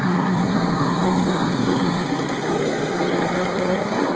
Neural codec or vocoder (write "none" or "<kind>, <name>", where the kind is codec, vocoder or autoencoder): codec, SNAC